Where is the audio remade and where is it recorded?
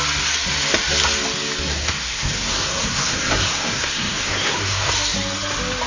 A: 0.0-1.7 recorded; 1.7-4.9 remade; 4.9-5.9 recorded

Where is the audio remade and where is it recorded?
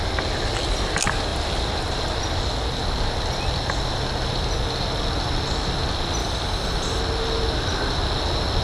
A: 0.0-6.2 recorded; 6.2-7.0 remade; 7.0-8.6 recorded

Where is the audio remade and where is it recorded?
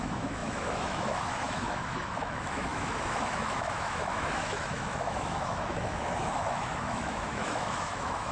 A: 0.0-8.3 remade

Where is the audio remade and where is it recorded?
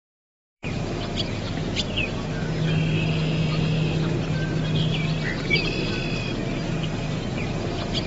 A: 0.0-3.5 remade; 3.5-4.9 recorded; 4.9-6.0 remade; 6.0-6.8 recorded; 6.8-8.1 remade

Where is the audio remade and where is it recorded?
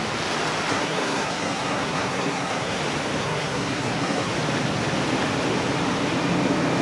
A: 0.0-0.7 recorded; 0.7-2.8 remade; 2.8-3.2 recorded; 3.2-4.3 remade; 4.3-6.8 recorded